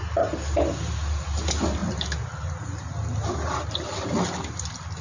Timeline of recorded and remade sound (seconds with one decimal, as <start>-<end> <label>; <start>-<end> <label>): 0.0-5.0 recorded